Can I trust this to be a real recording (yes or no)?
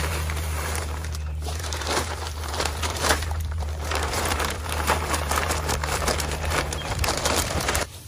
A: no